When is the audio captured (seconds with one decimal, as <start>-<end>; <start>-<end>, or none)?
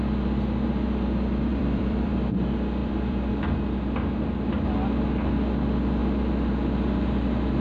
0.0-1.5; 2.1-2.8; 3.3-7.6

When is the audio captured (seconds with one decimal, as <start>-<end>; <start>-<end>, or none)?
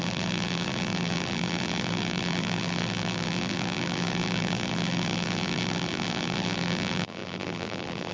none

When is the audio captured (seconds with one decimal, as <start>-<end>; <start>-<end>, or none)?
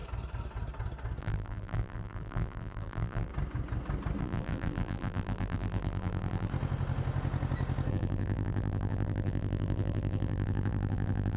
0.0-1.2; 3.3-4.2; 6.5-7.9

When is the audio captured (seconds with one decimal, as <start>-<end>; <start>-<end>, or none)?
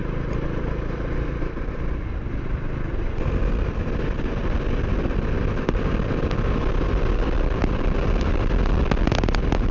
0.0-9.7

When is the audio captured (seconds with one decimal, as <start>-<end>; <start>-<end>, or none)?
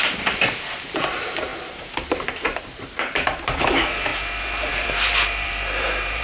none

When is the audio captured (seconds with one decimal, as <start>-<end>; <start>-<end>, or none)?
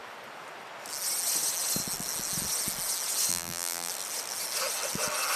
0.0-3.3; 3.9-5.4